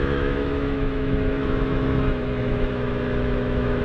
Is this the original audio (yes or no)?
no